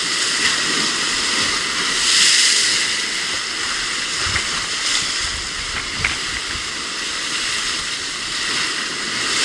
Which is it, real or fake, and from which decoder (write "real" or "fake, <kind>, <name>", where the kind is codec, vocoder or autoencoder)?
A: real